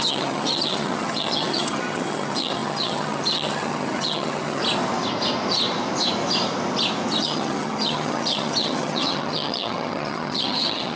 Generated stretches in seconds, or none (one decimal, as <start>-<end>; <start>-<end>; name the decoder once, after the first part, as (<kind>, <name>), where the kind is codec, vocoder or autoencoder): 0.0-4.6 (vocoder, HiFi-GAN); 7.2-11.0